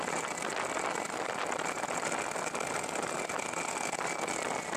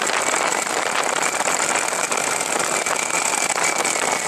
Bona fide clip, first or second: first